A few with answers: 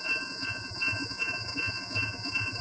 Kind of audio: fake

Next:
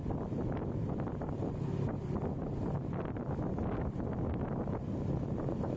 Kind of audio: real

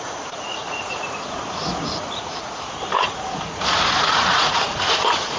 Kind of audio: fake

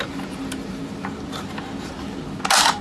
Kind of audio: real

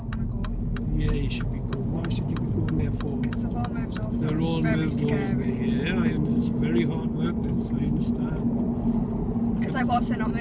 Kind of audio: real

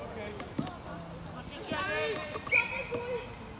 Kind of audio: real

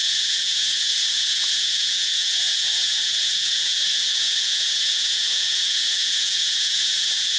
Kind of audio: fake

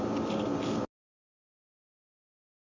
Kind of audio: real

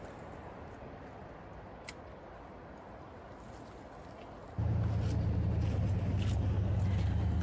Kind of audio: real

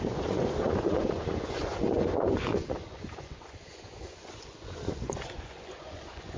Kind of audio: fake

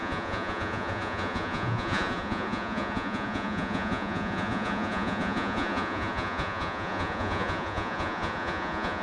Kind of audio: fake